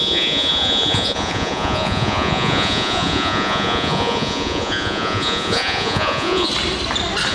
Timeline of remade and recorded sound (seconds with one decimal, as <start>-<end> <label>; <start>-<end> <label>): 0.0-6.5 remade; 6.5-7.3 recorded